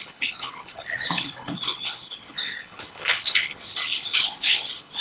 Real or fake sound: fake